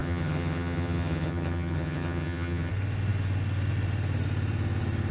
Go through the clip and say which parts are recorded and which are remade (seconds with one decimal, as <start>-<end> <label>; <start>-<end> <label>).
0.0-2.7 remade; 2.7-5.1 recorded